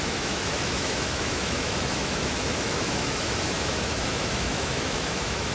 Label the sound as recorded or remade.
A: remade